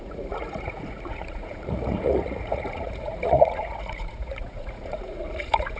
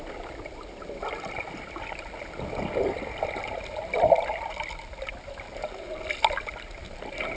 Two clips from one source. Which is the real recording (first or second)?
second